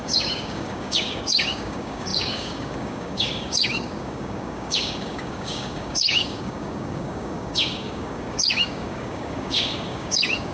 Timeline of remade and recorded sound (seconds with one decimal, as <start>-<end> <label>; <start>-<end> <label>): 0.0-10.5 remade